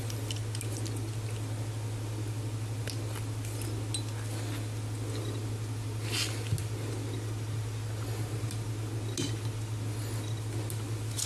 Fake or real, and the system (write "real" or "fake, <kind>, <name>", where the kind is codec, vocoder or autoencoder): real